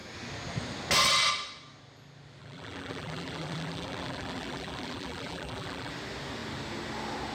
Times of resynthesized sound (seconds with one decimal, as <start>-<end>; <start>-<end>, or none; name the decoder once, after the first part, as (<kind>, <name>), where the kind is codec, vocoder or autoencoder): 2.4-5.9 (vocoder, BigVGAN v2)